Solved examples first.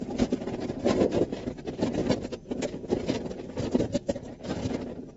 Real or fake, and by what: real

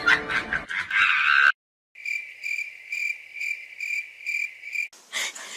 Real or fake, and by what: real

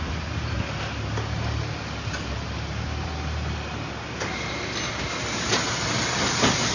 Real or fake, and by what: real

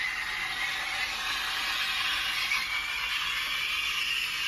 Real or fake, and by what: real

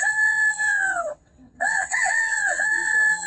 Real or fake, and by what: fake, vocoder, WaveNeXt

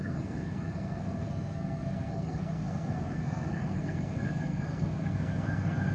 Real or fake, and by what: fake, codec, SNAC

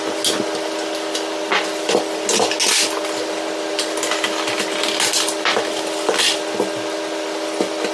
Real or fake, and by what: real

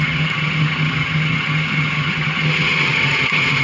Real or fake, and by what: fake, vocoder, HiFi-GAN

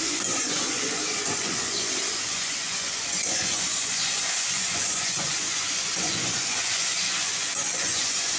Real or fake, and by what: fake, vocoder, Vocos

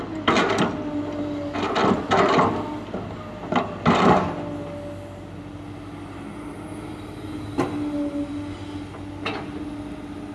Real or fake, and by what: real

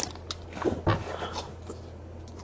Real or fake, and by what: real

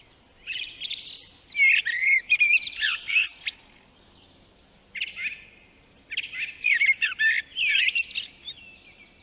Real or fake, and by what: real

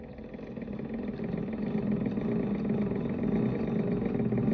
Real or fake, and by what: real